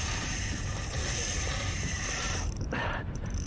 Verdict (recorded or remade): remade